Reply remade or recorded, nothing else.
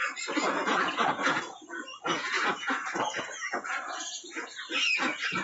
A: remade